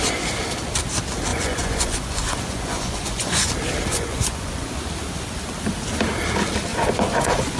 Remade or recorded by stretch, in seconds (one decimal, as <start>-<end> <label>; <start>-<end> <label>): 0.0-1.3 recorded; 1.3-3.5 remade; 3.5-3.9 recorded; 3.9-4.9 remade; 4.9-6.7 recorded; 6.7-7.6 remade